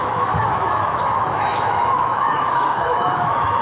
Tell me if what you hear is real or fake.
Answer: fake